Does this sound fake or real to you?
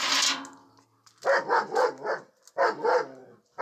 real